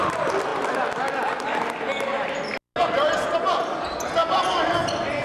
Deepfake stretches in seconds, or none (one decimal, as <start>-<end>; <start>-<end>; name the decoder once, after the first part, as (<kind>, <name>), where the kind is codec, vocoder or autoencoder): none